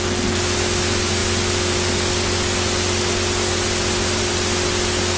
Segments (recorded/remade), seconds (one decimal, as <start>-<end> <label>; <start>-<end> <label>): 0.0-5.2 recorded